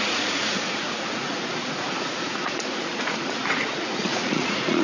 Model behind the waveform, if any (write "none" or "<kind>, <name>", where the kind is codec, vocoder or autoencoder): vocoder, Vocos